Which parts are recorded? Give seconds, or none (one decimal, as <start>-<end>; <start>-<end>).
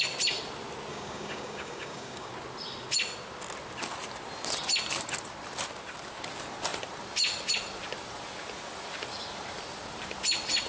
0.0-0.9; 2.3-10.7